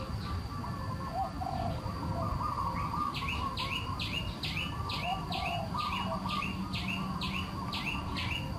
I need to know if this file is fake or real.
real